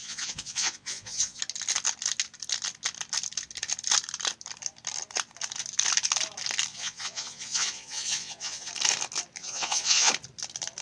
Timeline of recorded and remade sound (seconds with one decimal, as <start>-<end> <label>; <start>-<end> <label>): 0.0-1.4 remade; 1.4-6.7 recorded; 6.7-8.7 remade; 8.7-9.4 recorded; 9.4-10.1 remade; 10.1-10.8 recorded